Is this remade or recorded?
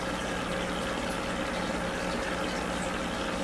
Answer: recorded